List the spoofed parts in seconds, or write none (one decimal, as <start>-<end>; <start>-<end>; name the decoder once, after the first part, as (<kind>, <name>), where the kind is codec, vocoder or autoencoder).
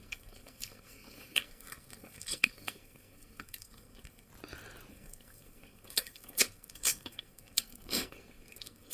0.0-4.3 (codec, SNAC); 4.9-8.9